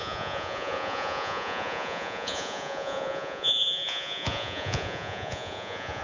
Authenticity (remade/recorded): remade